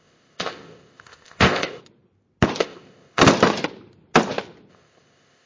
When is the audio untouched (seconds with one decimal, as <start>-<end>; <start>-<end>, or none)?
1.8-2.6; 3.2-4.7